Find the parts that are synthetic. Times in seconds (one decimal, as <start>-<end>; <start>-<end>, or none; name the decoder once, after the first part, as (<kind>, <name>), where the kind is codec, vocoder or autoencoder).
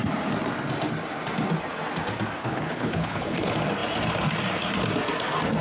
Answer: 2.4-3.4 (codec, HILCodec)